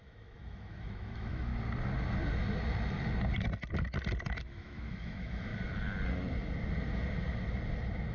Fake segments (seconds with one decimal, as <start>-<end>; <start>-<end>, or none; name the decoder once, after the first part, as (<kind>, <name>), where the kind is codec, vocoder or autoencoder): 0.0-1.5 (autoencoder, DAC-VAE); 4.5-5.5